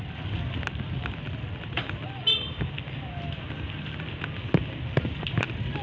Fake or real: real